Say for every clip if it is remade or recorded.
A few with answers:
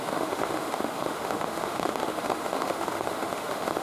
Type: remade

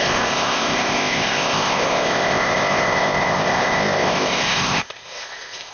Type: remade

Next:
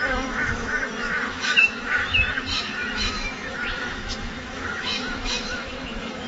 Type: remade